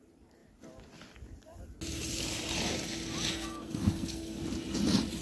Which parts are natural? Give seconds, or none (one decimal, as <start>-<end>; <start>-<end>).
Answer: 0.0-3.3; 4.4-5.2